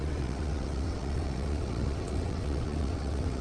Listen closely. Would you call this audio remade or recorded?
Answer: remade